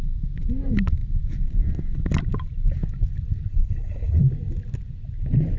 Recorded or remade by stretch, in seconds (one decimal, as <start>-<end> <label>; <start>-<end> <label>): 0.0-3.5 recorded; 3.5-4.2 remade; 4.2-5.6 recorded